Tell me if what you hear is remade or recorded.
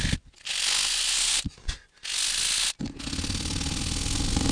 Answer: recorded